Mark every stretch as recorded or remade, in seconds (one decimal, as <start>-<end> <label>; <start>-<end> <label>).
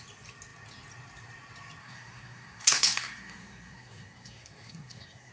0.0-1.8 recorded; 1.8-5.3 remade